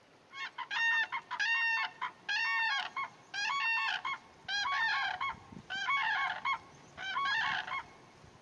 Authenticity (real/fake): real